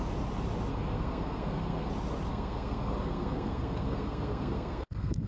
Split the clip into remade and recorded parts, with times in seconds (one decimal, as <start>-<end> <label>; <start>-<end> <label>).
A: 0.0-0.7 recorded; 0.7-1.9 remade; 1.9-2.3 recorded; 2.3-5.3 remade